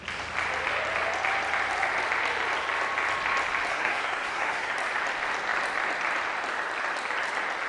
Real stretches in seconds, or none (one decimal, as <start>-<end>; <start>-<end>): 0.0-3.7; 4.7-7.7